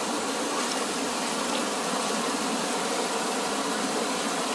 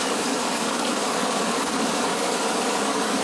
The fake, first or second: second